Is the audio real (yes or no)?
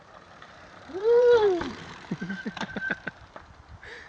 no